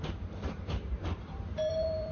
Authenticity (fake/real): fake